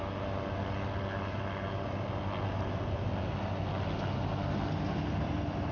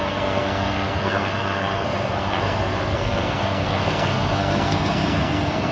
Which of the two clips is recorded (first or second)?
first